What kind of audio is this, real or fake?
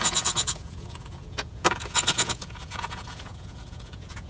fake